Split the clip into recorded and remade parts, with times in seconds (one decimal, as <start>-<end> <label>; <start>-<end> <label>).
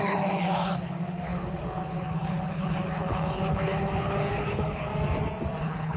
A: 0.0-4.9 remade; 4.9-5.6 recorded; 5.6-6.0 remade